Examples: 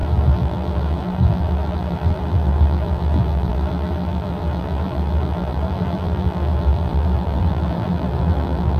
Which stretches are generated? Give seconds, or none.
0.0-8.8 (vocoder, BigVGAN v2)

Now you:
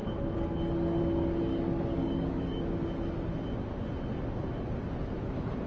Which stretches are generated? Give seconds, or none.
1.5-2.6 (codec, DAC)

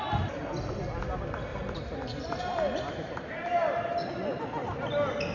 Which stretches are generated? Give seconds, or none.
1.5-2.4 (vocoder, BigVGAN v2)

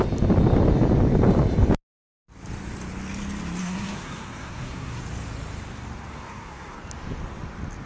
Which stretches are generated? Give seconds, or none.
3.6-5.0 (codec, SNAC); 6.1-6.8

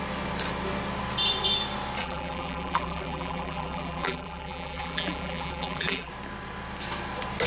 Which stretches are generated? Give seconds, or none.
2.0-6.1 (vocoder, BigVGAN v2)

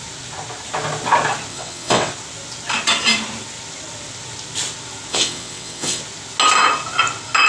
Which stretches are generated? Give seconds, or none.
1.5-2.1 (vocoder, WaveNeXt); 5.1-6.0

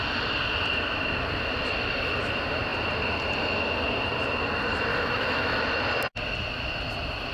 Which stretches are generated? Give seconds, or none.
4.9-5.6 (autoencoder, DAC-VAE)

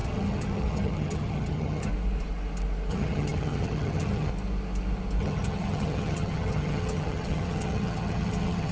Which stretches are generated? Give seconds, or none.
0.0-1.9 (vocoder, HiFi-GAN); 2.9-4.3; 5.2-8.7